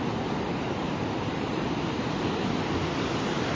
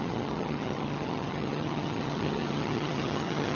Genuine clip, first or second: first